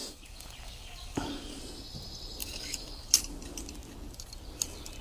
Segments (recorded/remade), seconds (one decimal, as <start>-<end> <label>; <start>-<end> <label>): 0.0-1.6 remade; 1.6-2.4 recorded; 2.4-3.1 remade; 3.1-5.0 recorded